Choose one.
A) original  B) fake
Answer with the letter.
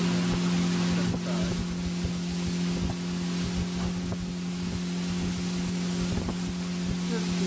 A